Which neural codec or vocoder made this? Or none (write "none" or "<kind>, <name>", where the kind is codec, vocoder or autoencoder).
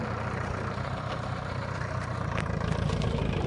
vocoder, BigVGAN v2